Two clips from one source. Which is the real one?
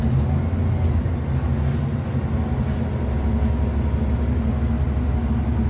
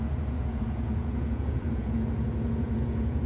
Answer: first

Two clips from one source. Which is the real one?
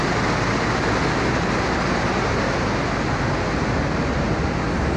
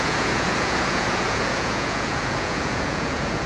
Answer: first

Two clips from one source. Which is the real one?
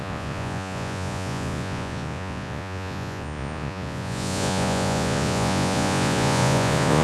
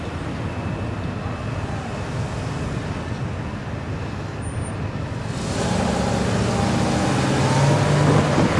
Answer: second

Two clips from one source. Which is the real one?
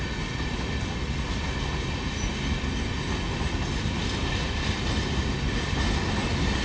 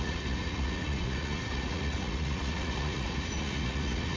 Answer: first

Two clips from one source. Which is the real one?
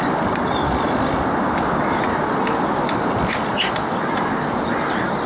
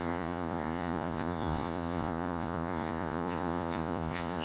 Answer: first